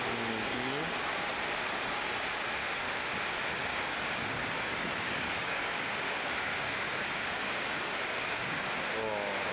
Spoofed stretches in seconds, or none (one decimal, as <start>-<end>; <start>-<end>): 2.6-3.3; 3.7-8.6